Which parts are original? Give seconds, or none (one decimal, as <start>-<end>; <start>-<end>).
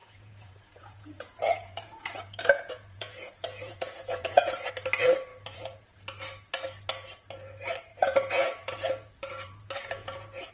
4.7-5.3; 6.0-7.9